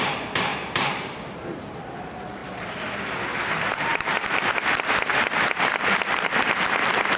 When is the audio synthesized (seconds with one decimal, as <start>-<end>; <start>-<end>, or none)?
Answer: 0.5-1.8; 3.9-4.5